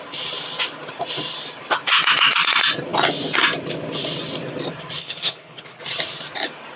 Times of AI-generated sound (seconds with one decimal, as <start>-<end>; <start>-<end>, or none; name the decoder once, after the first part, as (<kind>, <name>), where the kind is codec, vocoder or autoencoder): 5.0-5.8 (codec, HILCodec)